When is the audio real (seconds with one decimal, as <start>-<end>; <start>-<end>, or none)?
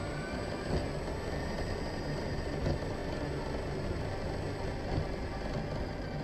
0.0-6.2